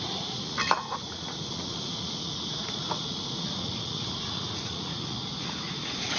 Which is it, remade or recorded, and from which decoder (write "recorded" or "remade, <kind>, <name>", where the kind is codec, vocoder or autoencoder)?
remade, vocoder, Vocos